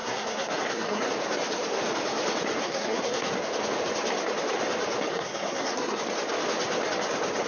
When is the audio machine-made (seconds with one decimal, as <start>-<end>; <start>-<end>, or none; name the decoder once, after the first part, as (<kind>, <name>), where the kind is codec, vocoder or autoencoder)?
0.0-1.1 (codec, SNAC); 2.6-3.3; 5.1-6.0